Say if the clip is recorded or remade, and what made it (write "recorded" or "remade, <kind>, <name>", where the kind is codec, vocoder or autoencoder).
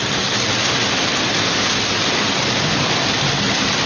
recorded